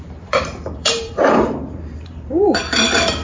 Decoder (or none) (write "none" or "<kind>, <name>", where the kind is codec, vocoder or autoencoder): vocoder, BigVGAN v2